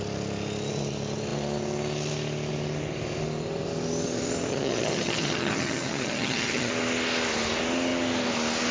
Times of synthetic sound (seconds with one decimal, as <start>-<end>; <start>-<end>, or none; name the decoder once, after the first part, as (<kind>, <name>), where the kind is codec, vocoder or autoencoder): 4.5-6.7 (vocoder, HiFi-GAN)

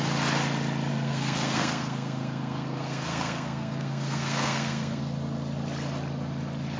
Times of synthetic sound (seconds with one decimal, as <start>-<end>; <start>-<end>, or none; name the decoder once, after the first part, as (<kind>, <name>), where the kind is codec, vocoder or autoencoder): 0.9-5.0 (codec, SNAC)